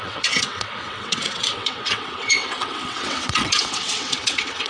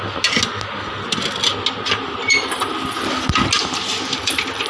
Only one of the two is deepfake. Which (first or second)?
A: first